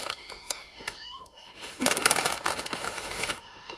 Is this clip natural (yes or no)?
no